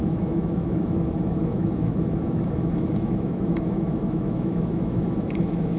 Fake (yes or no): yes